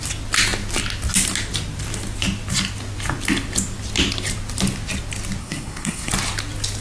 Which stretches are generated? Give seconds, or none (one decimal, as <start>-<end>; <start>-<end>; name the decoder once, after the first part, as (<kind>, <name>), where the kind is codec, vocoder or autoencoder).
5.4-6.1 (codec, SNAC)